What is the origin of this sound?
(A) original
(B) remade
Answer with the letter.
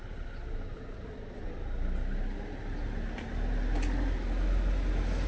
A